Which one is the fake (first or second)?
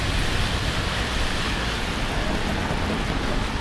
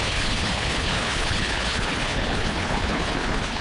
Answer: second